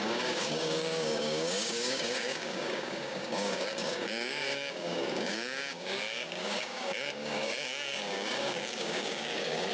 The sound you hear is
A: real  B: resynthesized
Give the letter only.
B